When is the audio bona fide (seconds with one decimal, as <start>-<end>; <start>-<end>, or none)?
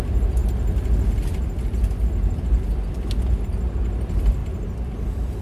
0.0-5.4